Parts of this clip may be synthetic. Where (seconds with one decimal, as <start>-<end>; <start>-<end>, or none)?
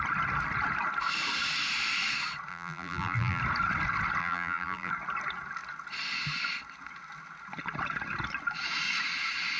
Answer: 2.5-3.4; 4.2-4.9